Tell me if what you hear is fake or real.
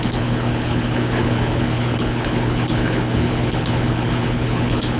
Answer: fake